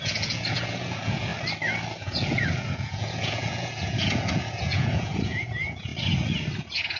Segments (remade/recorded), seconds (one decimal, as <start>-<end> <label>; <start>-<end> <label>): 0.0-1.3 remade; 1.3-1.9 recorded; 1.9-5.9 remade; 5.9-6.6 recorded; 6.6-7.0 remade